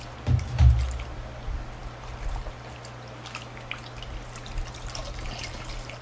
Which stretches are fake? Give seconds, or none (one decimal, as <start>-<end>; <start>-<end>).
none

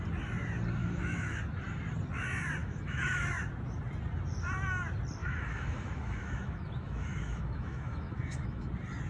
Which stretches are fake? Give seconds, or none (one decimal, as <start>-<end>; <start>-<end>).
0.8-1.4; 2.6-3.3; 5.2-8.7

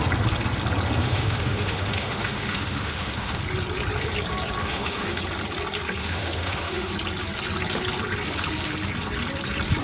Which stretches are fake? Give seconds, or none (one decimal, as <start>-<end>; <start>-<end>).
1.0-3.4; 4.6-5.2; 6.0-6.9

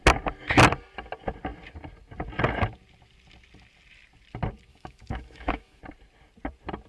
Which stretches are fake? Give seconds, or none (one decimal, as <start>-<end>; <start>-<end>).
4.7-5.8